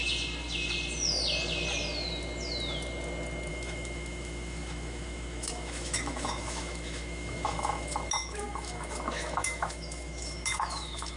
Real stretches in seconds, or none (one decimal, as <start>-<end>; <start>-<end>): 0.0-3.5